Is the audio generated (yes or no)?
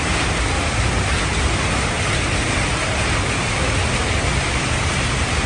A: no